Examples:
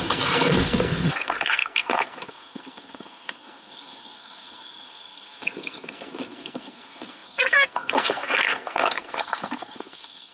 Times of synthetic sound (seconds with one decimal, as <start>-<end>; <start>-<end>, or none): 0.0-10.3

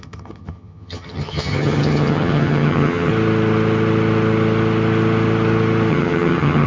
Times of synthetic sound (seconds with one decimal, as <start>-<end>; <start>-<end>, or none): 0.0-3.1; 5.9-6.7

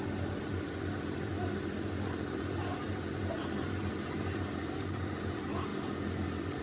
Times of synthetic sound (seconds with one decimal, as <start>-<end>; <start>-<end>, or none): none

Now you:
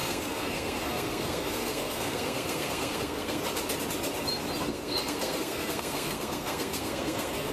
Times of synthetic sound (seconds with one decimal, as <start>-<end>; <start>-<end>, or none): 0.0-3.4; 4.6-7.5

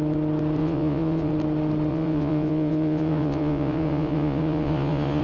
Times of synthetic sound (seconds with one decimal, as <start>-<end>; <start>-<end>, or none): 0.6-1.3; 1.9-5.2